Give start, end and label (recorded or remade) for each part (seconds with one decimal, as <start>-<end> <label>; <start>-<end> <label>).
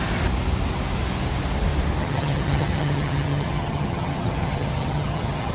0.0-2.0 recorded; 2.0-5.5 remade